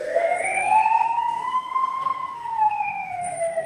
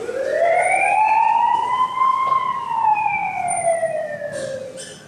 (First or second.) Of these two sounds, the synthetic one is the first